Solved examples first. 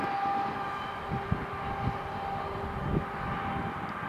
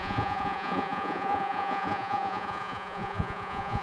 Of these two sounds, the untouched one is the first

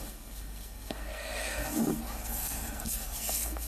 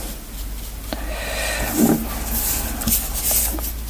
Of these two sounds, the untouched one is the second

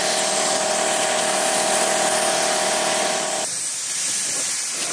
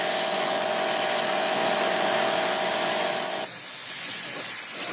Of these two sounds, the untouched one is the first